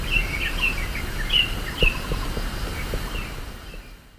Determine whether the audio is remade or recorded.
recorded